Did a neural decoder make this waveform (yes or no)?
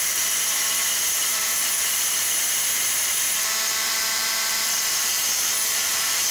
yes